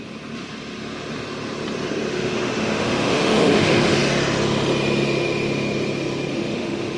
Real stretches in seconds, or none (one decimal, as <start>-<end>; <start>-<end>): 0.0-2.1; 4.0-6.3

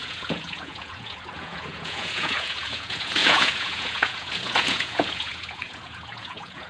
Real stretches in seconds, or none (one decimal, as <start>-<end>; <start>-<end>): none

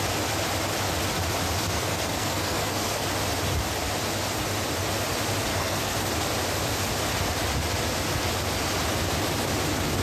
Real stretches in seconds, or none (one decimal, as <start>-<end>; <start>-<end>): 0.0-1.6; 3.1-5.5; 6.1-10.0

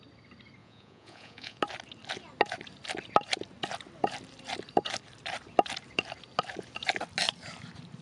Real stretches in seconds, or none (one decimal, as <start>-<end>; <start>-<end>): 0.0-0.6; 1.6-8.0

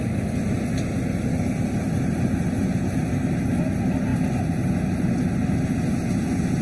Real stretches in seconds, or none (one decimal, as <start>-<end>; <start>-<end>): 0.0-6.6

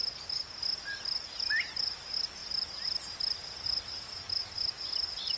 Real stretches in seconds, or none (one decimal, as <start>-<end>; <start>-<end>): 0.0-5.4